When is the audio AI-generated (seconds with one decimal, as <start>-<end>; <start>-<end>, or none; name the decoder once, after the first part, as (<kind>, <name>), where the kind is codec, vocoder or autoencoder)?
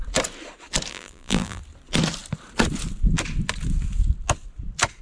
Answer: 0.9-1.6 (vocoder, BigVGAN v2)